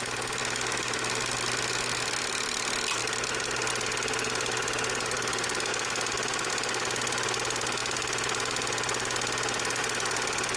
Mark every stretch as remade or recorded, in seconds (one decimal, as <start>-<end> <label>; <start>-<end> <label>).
0.0-10.6 recorded